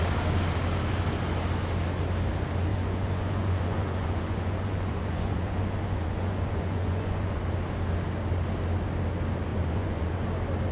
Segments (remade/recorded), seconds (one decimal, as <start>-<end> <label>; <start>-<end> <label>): 0.0-2.7 recorded; 2.7-7.4 remade; 7.4-9.5 recorded; 9.5-10.1 remade; 10.1-10.7 recorded